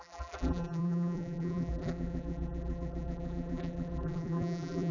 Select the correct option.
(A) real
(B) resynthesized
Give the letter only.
B